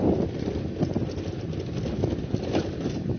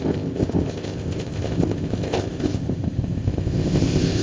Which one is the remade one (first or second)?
second